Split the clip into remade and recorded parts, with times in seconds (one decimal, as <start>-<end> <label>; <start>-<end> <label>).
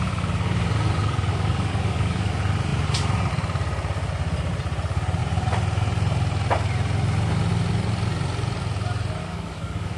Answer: 0.0-1.3 recorded; 1.3-2.3 remade; 2.3-9.2 recorded; 9.2-10.0 remade